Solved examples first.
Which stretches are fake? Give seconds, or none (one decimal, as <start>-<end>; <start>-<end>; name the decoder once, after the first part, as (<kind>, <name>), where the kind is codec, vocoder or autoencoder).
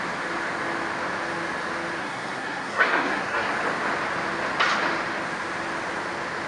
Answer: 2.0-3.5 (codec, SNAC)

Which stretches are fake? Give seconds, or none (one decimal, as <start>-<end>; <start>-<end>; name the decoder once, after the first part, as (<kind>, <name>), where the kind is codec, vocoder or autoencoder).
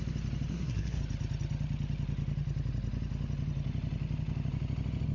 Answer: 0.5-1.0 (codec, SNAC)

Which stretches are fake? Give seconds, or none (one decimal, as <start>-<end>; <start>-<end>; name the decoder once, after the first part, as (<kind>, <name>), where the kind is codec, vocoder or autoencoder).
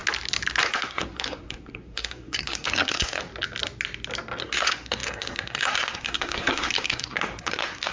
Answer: 0.7-3.3 (codec, SNAC); 4.4-7.9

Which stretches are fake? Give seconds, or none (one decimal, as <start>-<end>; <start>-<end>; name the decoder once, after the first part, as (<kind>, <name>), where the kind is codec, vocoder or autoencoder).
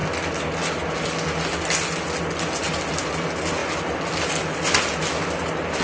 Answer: none